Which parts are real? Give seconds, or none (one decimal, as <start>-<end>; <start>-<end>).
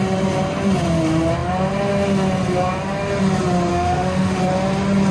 0.0-3.7; 4.4-5.1